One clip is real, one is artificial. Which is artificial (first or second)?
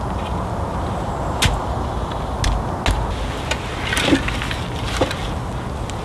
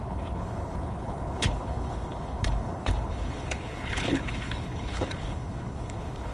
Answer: second